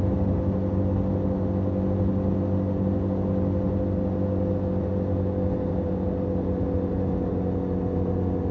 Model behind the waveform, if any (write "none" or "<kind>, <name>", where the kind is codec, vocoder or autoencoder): none